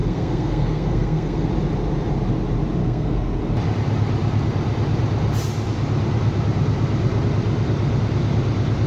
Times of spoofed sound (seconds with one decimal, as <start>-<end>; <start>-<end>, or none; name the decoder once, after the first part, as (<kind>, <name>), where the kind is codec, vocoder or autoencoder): 0.0-1.5 (codec, SNAC); 2.8-3.4